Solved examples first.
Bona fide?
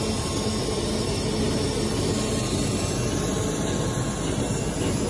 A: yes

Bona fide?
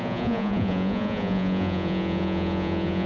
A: no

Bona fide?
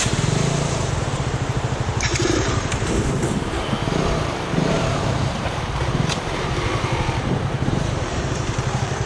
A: no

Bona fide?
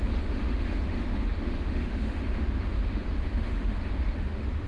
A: no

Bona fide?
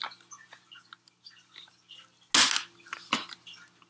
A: yes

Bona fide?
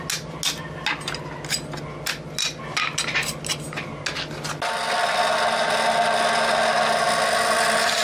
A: yes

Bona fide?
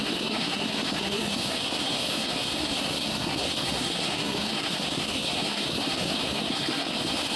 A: no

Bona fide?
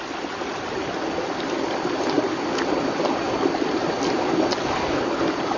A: yes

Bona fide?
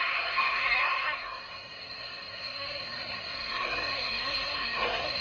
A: no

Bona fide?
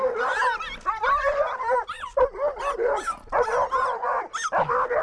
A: yes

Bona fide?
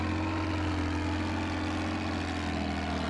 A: yes